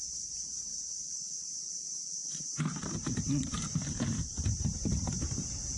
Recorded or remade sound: remade